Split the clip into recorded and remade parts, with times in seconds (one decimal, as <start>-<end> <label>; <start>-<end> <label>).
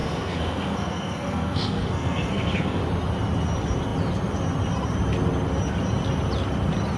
0.0-2.8 remade; 2.8-7.0 recorded